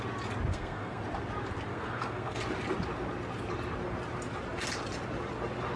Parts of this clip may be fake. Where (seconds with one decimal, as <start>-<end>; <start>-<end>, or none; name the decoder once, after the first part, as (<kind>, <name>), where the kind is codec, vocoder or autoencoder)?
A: 0.5-1.0 (codec, SNAC); 1.7-2.4